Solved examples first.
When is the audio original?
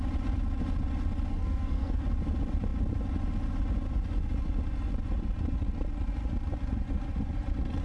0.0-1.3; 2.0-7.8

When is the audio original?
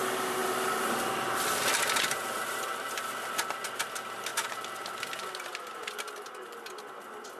0.0-7.4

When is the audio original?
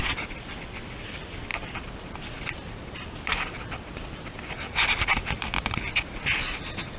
0.0-7.0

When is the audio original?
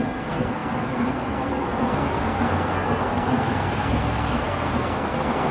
none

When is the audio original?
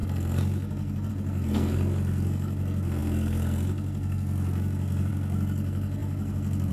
none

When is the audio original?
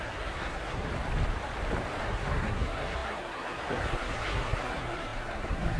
0.9-2.0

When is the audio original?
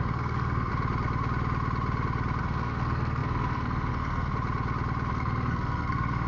0.7-2.4; 4.3-5.1